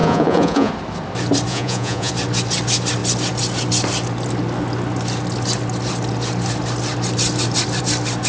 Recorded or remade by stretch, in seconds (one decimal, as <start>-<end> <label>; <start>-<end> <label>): 0.0-0.7 remade; 0.7-1.5 recorded; 1.5-2.1 remade; 2.1-8.3 recorded